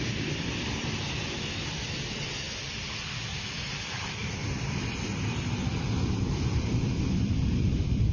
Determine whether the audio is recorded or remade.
remade